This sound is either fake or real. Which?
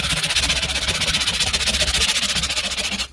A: real